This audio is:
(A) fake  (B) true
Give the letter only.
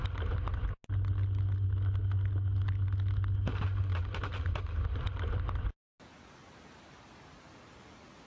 B